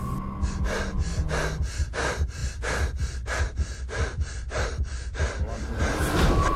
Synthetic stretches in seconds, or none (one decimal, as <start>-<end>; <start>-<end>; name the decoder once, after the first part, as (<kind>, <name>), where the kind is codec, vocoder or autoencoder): none